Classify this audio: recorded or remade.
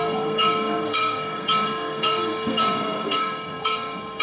remade